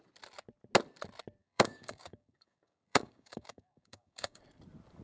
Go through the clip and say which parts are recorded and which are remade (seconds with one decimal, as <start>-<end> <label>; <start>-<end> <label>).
0.0-1.4 recorded; 1.4-4.4 remade; 4.4-5.0 recorded